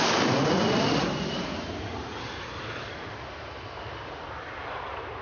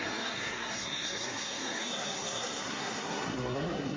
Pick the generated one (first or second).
second